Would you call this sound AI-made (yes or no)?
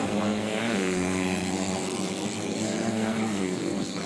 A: yes